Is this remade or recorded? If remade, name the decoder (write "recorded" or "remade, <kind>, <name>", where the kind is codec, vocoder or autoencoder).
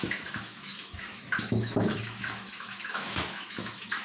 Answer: remade, autoencoder, DAC-VAE